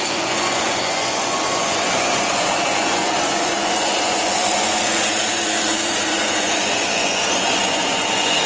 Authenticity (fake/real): fake